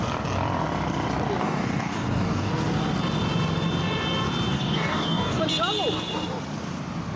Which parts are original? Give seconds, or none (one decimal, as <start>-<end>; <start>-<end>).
0.0-1.4; 2.5-4.5; 5.4-7.2